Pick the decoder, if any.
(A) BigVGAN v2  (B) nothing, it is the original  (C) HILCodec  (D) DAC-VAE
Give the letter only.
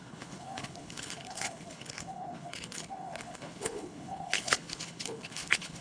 C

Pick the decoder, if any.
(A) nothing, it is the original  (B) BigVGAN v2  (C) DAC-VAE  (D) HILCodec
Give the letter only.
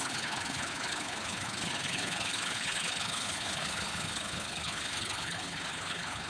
D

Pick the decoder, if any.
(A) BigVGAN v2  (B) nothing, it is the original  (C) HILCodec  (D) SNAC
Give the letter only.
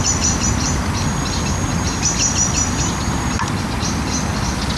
B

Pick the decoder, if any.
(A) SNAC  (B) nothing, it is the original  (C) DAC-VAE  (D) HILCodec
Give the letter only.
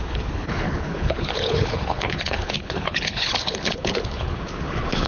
D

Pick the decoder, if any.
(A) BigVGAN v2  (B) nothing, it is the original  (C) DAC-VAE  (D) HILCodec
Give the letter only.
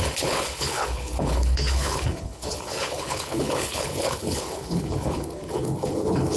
D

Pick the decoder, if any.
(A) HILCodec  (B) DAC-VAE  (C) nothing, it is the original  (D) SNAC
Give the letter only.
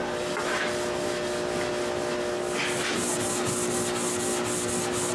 C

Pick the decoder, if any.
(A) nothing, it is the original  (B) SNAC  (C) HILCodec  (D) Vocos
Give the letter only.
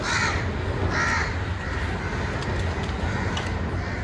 A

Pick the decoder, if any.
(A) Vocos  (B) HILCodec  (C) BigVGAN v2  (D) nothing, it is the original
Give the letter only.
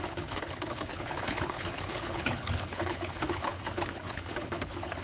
B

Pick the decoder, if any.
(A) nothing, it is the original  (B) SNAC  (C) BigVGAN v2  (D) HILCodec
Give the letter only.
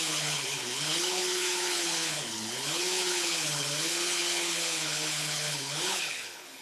D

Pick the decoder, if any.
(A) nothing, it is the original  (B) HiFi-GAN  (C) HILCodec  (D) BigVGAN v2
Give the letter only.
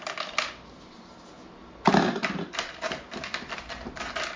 A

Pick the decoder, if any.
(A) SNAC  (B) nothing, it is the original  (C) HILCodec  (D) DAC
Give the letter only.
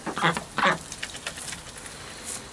B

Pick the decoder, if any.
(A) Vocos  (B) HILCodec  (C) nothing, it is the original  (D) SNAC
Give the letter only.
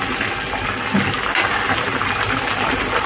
C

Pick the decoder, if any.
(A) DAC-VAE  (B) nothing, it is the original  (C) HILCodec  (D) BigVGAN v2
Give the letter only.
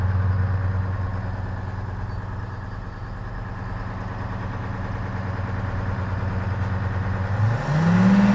B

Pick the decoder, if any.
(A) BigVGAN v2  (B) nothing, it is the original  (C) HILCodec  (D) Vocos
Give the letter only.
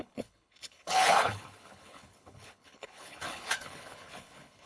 C